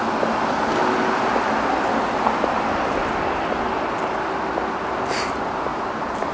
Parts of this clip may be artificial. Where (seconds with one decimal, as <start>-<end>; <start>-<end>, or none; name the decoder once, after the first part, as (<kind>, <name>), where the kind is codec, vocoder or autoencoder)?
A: 5.7-6.3 (vocoder, BigVGAN v2)